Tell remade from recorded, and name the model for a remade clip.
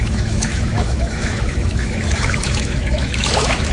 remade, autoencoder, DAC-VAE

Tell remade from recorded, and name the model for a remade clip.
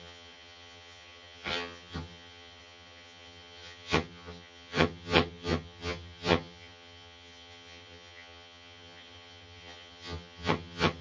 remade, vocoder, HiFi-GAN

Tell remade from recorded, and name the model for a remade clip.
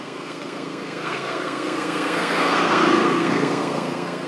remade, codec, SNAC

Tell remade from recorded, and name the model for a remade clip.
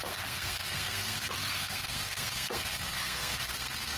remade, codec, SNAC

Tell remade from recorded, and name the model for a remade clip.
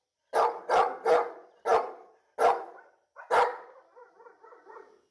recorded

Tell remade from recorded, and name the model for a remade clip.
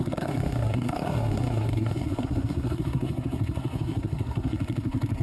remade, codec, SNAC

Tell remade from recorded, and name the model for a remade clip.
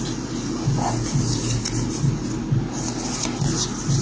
recorded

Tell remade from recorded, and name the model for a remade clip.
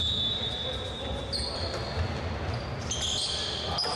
recorded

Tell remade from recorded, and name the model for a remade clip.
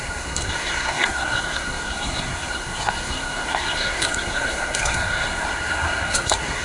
remade, codec, SNAC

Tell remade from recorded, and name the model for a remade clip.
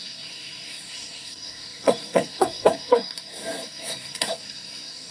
remade, codec, SNAC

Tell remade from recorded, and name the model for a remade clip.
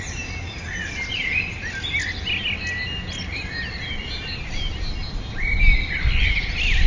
recorded